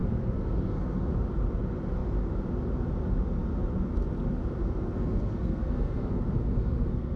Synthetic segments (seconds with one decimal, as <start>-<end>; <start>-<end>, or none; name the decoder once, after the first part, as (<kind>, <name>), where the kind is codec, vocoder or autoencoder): 0.0-1.1 (codec, SNAC); 4.6-7.2